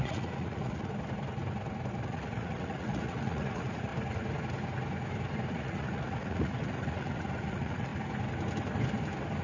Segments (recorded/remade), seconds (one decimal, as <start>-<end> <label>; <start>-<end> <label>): 0.0-0.9 remade; 0.9-2.0 recorded; 2.0-3.9 remade; 3.9-5.5 recorded; 5.5-7.9 remade; 7.9-9.4 recorded